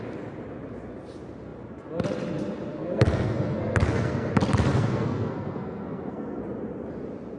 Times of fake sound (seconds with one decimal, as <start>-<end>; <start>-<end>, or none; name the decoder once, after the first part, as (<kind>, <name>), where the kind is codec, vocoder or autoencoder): 2.7-4.3 (codec, SNAC); 4.7-6.4